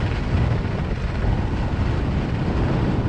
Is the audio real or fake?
real